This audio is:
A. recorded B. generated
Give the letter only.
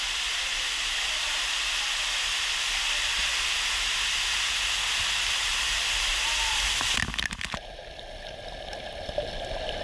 A